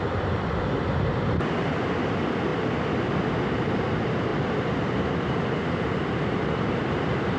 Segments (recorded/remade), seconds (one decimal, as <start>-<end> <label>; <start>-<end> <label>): 0.0-7.4 remade